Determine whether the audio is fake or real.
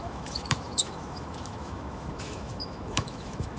fake